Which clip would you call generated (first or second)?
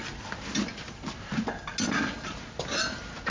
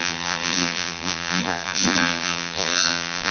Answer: second